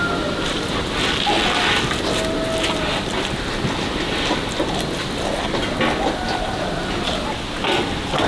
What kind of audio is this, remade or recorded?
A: recorded